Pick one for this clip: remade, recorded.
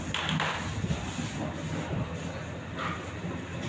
recorded